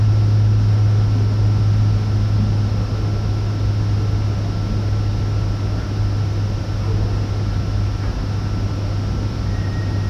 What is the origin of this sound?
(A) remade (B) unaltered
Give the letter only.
B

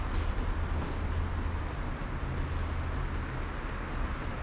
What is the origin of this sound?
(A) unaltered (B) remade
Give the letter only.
A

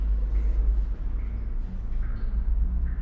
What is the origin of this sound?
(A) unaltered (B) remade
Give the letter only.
A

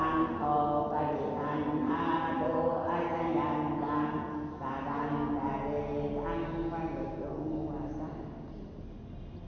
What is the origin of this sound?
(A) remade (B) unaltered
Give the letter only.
B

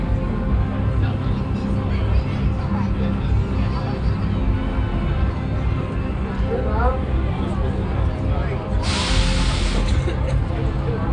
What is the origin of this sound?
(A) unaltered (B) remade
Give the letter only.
A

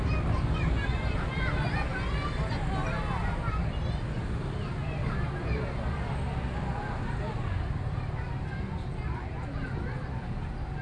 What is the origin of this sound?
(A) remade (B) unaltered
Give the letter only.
B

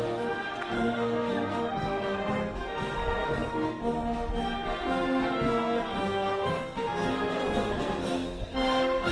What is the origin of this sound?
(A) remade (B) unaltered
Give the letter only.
A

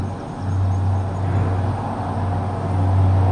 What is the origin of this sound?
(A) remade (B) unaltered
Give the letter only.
B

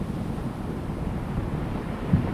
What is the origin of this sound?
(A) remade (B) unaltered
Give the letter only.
B